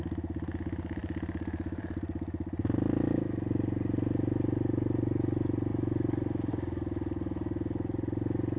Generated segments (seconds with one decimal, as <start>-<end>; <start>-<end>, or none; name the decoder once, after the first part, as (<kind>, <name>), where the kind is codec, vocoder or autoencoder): none